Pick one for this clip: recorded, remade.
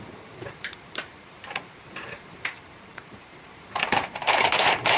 remade